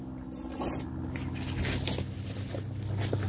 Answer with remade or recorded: recorded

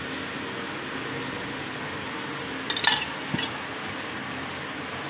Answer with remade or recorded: recorded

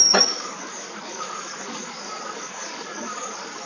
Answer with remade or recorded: remade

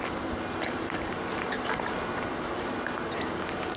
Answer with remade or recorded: recorded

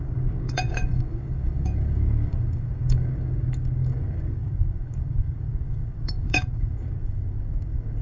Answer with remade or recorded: remade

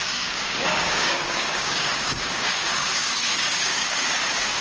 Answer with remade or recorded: remade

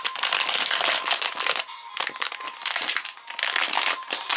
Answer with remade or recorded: recorded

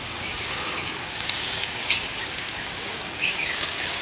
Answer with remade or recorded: remade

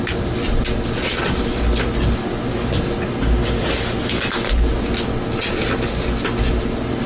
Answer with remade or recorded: recorded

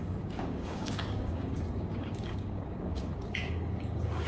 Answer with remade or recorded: remade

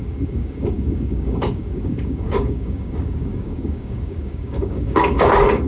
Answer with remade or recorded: remade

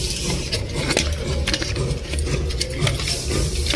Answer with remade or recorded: recorded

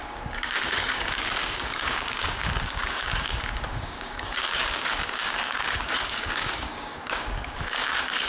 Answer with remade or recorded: remade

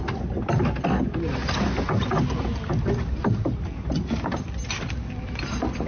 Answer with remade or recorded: recorded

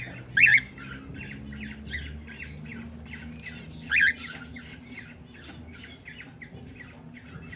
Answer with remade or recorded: recorded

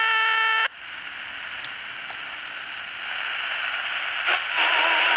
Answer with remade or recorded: recorded